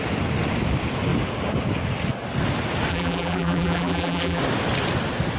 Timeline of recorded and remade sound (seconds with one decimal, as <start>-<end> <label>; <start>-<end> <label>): 0.0-2.9 recorded; 2.9-4.4 remade; 4.4-5.4 recorded